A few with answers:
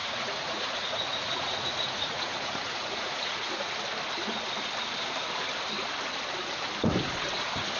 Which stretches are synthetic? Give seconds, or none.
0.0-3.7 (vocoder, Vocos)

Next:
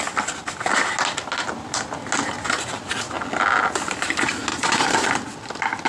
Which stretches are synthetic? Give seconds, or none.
4.5-5.1 (vocoder, Vocos)